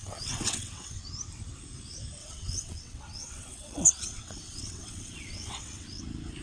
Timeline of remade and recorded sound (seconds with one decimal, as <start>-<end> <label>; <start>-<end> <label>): 0.0-1.0 remade; 1.0-2.2 recorded; 2.2-6.0 remade; 6.0-6.4 recorded